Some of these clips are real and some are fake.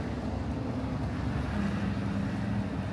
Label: real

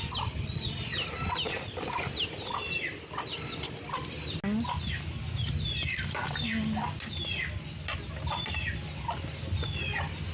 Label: real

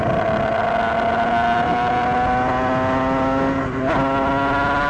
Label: real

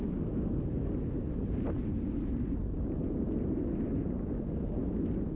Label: real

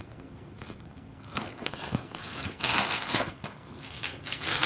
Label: fake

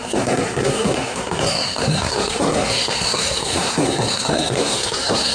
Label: fake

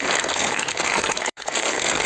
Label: fake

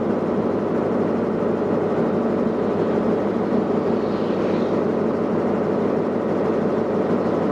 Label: real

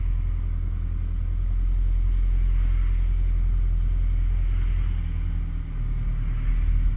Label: real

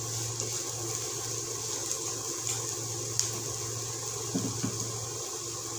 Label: real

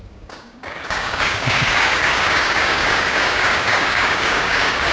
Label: fake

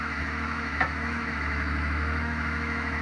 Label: fake